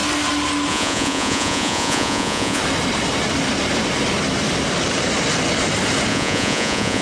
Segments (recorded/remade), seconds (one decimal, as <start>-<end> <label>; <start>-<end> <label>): 0.0-0.7 recorded; 0.7-2.6 remade; 2.6-6.1 recorded; 6.1-7.0 remade